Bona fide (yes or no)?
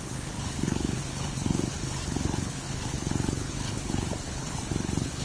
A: no